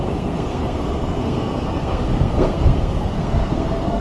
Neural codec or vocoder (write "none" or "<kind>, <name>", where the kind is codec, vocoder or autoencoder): codec, SNAC